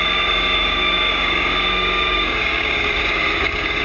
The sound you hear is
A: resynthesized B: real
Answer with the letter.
A